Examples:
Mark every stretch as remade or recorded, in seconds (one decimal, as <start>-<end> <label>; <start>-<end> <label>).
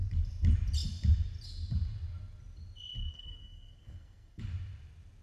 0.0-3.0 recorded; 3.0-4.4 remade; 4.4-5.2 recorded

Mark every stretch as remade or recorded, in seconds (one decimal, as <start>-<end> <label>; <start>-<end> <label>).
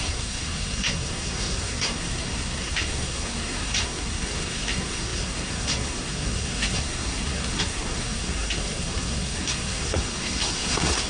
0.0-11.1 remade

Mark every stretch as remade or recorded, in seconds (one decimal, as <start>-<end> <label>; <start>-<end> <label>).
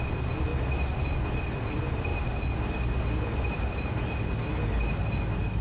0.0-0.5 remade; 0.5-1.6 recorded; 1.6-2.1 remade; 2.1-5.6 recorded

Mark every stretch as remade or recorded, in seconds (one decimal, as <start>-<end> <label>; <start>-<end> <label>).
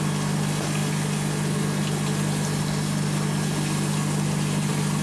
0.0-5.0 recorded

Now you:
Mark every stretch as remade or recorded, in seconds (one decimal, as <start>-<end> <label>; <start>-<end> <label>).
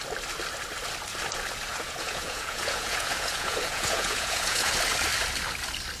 0.0-1.7 recorded; 1.7-4.7 remade; 4.7-6.0 recorded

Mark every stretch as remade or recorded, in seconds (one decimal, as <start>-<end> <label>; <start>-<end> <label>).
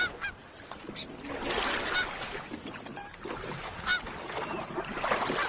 0.0-5.5 recorded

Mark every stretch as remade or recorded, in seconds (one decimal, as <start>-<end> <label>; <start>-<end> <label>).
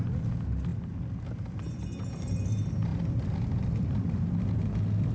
0.0-2.9 recorded; 2.9-5.1 remade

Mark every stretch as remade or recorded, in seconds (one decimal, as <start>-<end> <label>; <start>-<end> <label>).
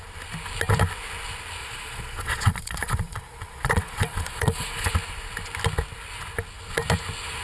0.0-1.6 recorded; 1.6-4.9 remade; 4.9-7.4 recorded